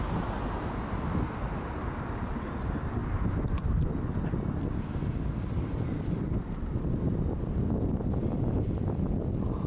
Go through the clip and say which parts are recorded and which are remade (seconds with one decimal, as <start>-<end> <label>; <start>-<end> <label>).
0.0-9.7 recorded